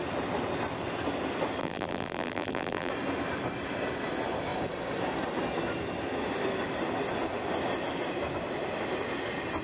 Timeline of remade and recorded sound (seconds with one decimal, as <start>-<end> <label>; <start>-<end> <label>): 0.0-1.6 recorded; 1.6-2.9 remade; 2.9-9.6 recorded